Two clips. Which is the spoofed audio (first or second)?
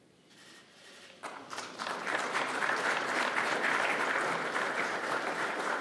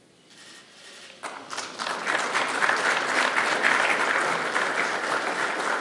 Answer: first